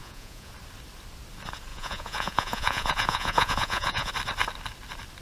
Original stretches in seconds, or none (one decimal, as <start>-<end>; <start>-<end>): 0.5-1.7; 4.1-5.2